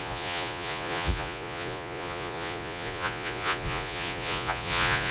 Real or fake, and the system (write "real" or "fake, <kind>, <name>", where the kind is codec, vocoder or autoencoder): fake, vocoder, Vocos